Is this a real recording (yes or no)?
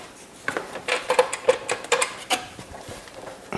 no